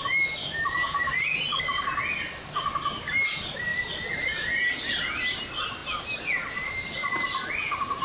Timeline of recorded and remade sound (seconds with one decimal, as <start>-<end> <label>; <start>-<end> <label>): 0.0-0.4 recorded; 0.4-1.1 remade; 1.1-8.0 recorded

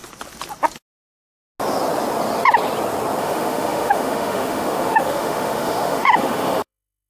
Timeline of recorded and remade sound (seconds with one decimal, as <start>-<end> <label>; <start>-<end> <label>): 0.0-3.2 recorded; 3.2-7.1 remade

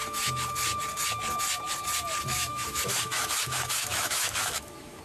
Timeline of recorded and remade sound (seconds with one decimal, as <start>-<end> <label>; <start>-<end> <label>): 0.0-2.3 recorded; 2.3-5.0 remade

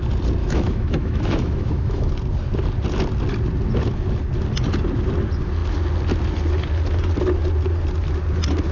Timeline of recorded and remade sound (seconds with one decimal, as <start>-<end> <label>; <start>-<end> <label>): 0.0-0.4 recorded; 0.4-2.1 remade; 2.1-8.7 recorded

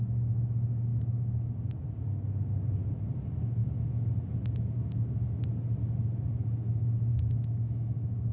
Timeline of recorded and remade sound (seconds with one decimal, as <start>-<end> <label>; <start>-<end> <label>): 0.0-0.9 recorded; 0.9-1.5 remade; 1.5-7.1 recorded; 7.1-8.3 remade

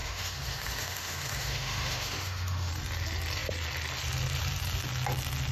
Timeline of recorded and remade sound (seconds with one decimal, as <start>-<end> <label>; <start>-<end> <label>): 0.0-2.7 remade; 2.7-5.5 recorded

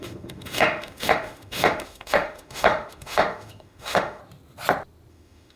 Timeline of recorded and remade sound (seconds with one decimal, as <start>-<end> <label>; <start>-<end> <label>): 0.0-4.2 remade; 4.2-5.1 recorded; 5.1-5.6 remade